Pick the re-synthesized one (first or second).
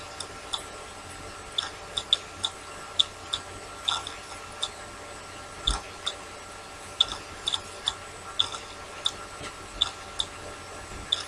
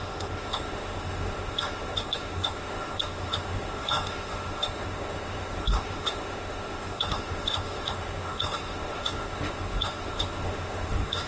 second